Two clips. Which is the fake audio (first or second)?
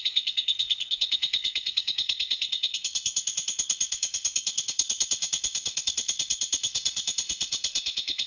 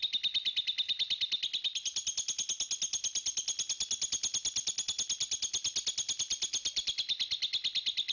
first